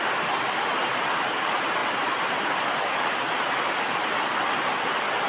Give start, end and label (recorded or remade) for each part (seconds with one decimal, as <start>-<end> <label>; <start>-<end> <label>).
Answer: 0.0-1.8 recorded; 1.8-2.4 remade; 2.4-5.3 recorded